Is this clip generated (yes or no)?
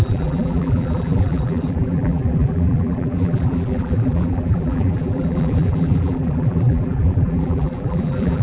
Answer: yes